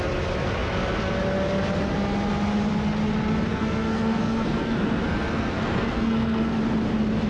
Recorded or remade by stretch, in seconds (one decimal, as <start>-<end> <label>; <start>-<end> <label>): 0.0-3.5 recorded; 3.5-6.6 remade; 6.6-7.3 recorded